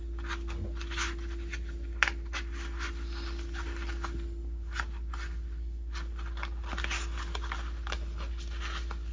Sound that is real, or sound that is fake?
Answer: real